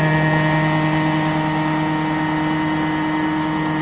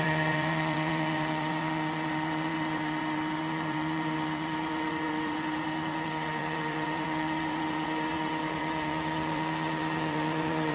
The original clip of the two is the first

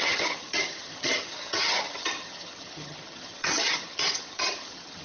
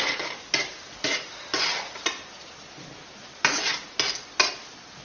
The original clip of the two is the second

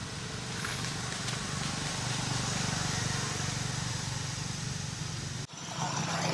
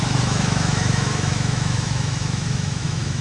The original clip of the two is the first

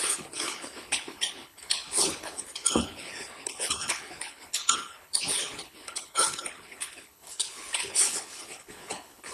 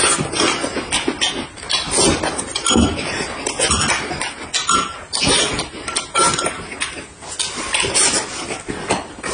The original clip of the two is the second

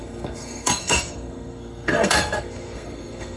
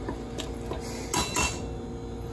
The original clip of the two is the second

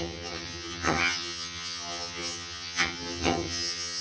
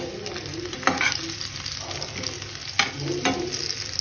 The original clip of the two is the second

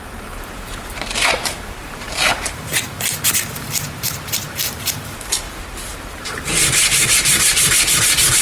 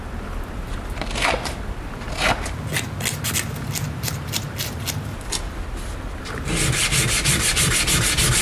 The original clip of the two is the second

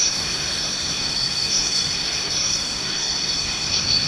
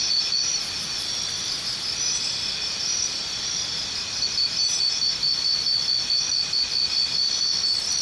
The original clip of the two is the second